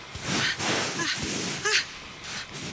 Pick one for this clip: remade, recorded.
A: recorded